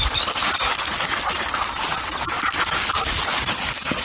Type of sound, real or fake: real